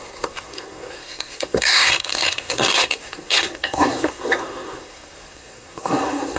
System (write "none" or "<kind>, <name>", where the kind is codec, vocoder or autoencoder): codec, SNAC